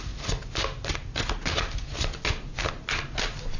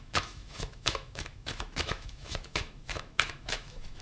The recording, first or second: first